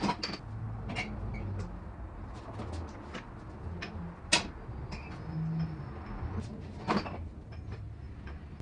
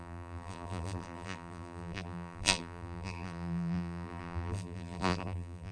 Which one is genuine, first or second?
first